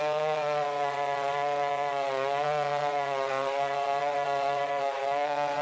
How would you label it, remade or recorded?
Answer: remade